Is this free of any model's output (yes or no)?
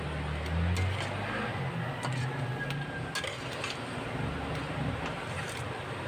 yes